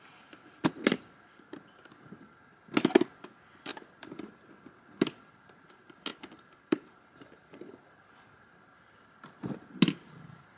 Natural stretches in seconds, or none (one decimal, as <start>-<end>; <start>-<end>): 0.0-3.7; 4.5-6.1; 8.1-10.6